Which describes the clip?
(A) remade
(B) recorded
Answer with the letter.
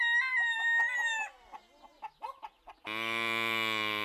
B